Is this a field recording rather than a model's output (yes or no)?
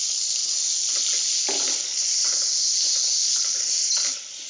yes